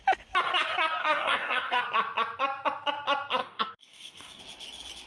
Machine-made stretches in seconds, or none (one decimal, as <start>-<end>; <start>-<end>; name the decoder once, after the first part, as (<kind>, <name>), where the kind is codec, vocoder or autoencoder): 1.0-1.8 (codec, DAC); 3.4-4.4